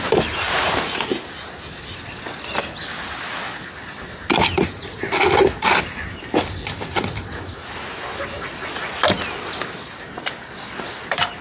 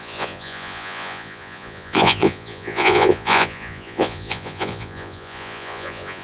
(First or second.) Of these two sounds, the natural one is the first